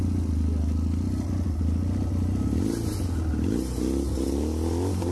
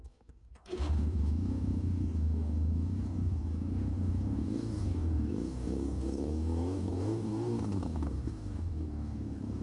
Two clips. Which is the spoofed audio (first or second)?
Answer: second